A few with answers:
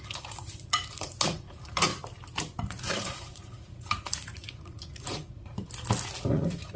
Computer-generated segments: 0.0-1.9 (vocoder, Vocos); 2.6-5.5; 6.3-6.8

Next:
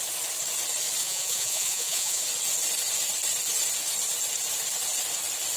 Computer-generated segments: 1.0-2.2 (vocoder, Vocos)

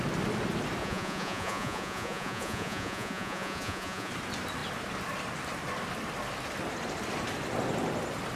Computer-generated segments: 0.8-4.1 (vocoder, Vocos)